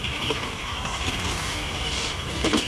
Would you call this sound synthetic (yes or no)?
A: yes